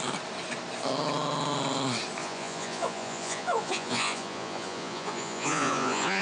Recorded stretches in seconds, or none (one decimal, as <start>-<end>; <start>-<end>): 0.0-2.2